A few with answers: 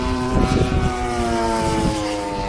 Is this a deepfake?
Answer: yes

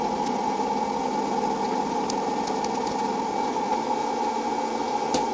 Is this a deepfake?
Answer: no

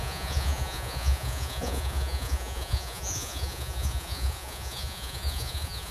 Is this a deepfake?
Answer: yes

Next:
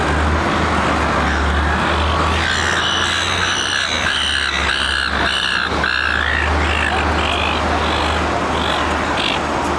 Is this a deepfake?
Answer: no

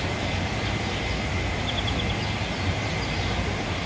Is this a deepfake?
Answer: no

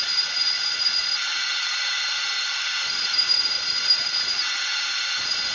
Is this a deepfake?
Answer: yes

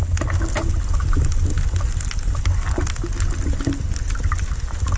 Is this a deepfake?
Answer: no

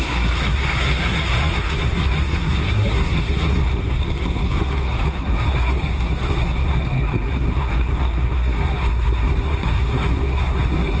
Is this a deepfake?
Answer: yes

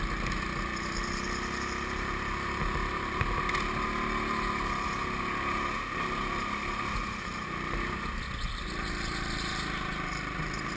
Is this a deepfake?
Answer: no